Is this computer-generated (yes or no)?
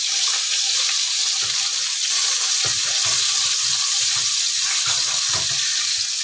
no